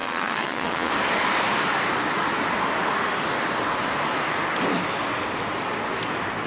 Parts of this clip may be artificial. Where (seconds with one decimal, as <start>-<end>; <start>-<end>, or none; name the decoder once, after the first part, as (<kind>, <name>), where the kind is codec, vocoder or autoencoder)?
0.0-0.9 (vocoder, Vocos)

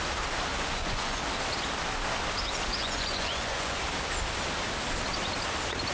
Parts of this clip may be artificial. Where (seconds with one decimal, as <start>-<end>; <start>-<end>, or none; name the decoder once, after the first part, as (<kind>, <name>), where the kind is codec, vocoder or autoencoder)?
0.5-1.2 (vocoder, Vocos); 2.8-3.8

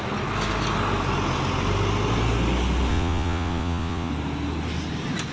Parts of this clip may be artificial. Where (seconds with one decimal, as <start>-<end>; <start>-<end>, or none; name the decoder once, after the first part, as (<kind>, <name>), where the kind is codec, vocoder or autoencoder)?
2.9-4.1 (vocoder, Vocos)

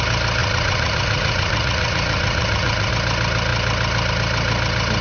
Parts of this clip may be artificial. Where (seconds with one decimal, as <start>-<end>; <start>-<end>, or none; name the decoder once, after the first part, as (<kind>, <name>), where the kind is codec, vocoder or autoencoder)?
0.4-2.9 (vocoder, Vocos)

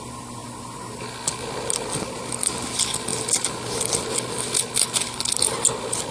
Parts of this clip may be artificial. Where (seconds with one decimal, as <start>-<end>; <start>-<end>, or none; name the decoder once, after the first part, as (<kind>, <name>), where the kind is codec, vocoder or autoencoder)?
none

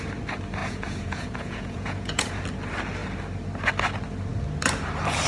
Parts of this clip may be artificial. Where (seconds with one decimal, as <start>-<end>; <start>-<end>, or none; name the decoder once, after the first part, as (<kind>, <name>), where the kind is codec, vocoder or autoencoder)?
0.6-2.3 (vocoder, Vocos)

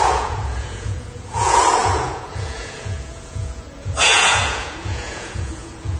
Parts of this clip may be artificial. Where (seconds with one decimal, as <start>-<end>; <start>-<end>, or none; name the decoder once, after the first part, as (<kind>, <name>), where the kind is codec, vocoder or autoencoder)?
0.0-6.0 (vocoder, Vocos)

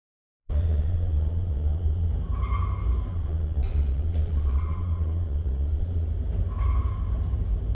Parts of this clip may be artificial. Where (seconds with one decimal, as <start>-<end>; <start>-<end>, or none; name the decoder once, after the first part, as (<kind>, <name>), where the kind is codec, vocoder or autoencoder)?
0.4-2.1 (vocoder, Vocos); 3.1-6.1